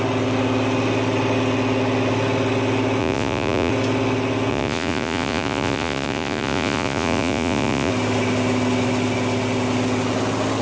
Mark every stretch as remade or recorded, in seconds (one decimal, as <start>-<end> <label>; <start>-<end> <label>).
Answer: 0.0-3.0 recorded; 3.0-3.7 remade; 3.7-4.5 recorded; 4.5-7.9 remade; 7.9-10.6 recorded